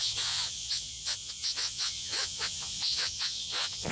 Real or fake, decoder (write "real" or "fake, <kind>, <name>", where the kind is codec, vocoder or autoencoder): fake, vocoder, Vocos